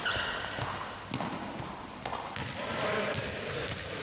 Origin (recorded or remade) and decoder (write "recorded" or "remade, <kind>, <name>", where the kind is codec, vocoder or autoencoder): recorded